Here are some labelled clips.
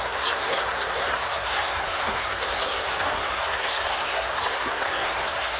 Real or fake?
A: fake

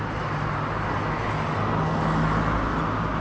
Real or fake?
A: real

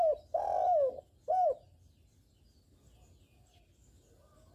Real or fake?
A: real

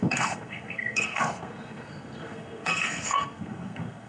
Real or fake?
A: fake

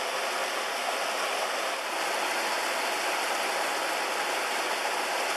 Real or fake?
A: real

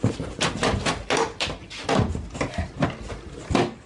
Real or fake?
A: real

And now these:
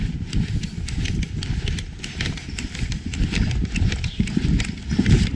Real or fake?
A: real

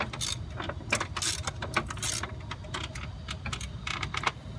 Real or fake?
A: real